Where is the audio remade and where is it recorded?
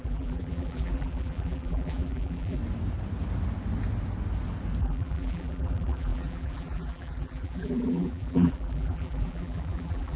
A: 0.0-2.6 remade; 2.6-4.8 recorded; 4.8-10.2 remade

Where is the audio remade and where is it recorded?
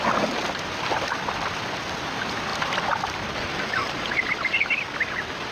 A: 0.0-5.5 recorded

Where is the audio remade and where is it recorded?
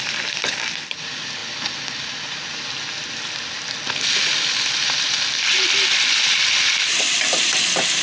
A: 0.0-8.0 remade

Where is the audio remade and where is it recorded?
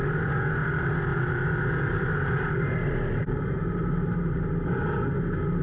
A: 0.0-1.1 recorded; 1.1-4.5 remade; 4.5-5.6 recorded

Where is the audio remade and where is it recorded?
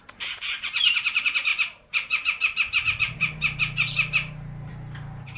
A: 0.0-5.4 remade